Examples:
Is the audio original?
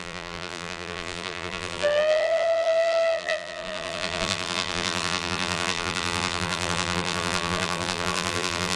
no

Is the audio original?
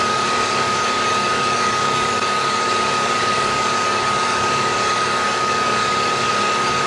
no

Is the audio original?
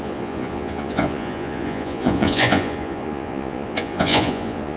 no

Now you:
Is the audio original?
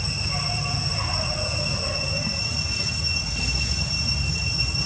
yes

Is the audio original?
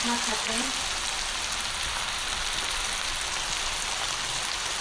no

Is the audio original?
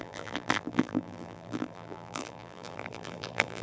no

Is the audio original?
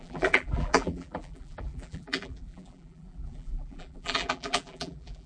no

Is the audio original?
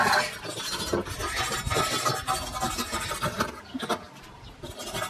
yes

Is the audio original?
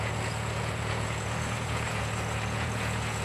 no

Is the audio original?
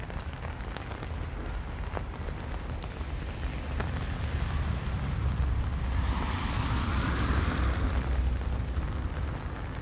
yes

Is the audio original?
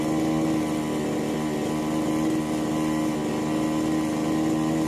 yes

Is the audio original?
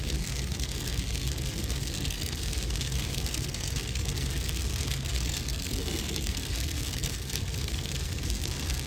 no